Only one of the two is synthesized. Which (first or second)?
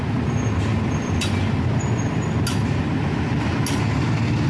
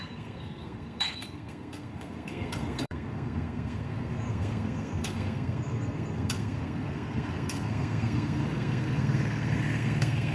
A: second